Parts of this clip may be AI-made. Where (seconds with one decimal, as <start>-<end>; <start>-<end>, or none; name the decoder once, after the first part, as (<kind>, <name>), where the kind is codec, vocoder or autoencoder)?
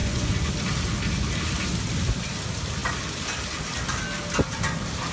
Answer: 0.0-0.5 (vocoder, Vocos)